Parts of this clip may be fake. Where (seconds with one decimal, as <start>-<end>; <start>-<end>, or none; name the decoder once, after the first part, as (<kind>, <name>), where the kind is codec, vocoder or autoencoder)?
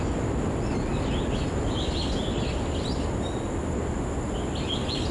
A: none